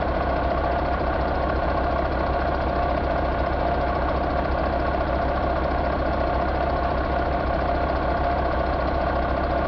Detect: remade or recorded recorded